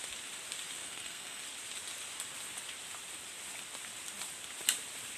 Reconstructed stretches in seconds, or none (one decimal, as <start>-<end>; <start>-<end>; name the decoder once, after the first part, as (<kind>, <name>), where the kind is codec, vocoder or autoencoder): 0.8-1.4 (codec, SNAC)